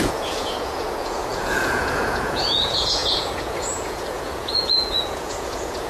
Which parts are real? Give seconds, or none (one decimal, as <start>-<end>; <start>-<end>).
none